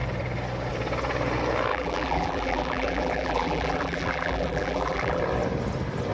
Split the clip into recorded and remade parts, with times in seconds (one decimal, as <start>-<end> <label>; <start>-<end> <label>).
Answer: 0.0-1.7 recorded; 1.7-5.2 remade; 5.2-6.1 recorded